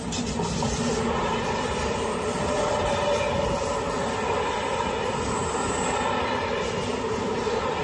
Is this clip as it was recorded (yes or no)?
yes